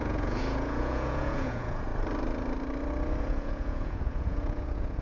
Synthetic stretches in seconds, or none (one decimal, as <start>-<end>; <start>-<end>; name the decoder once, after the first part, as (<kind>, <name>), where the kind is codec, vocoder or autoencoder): 0.0-1.9 (vocoder, Vocos); 3.2-5.0